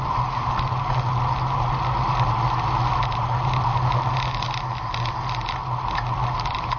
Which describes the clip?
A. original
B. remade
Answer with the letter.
A